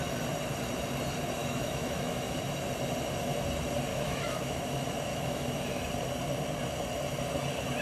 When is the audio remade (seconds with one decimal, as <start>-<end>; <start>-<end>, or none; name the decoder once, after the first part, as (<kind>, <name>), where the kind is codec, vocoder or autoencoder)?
1.4-2.4 (autoencoder, DAC-VAE); 3.9-4.6; 5.1-5.6